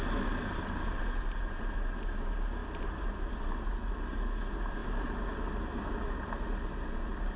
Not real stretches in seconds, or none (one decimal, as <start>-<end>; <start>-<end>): none